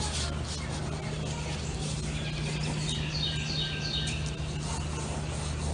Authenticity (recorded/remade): recorded